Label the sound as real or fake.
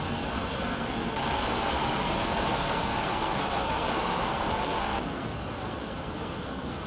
fake